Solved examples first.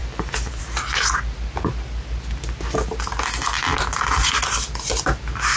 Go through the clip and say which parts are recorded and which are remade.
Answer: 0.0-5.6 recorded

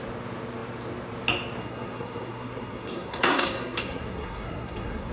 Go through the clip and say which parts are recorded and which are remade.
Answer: 0.0-1.6 recorded; 1.6-5.1 remade

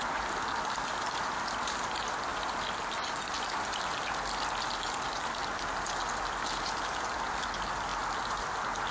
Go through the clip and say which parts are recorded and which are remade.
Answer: 0.0-8.9 recorded

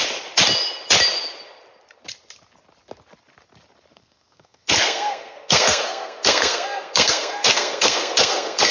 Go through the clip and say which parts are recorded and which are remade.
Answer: 0.0-3.9 recorded; 3.9-8.7 remade

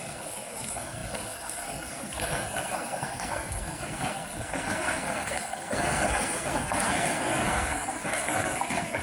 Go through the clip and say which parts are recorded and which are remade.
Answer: 0.0-9.0 remade

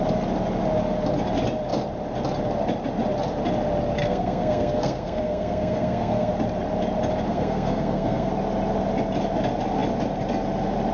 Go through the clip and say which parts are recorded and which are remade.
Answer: 0.0-4.0 recorded; 4.0-6.3 remade; 6.3-7.3 recorded; 7.3-8.3 remade; 8.3-10.9 recorded

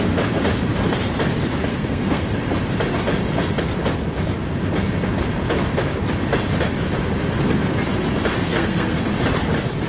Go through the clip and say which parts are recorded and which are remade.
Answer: 0.0-1.7 recorded; 1.7-2.3 remade; 2.3-8.4 recorded; 8.4-9.0 remade; 9.0-9.9 recorded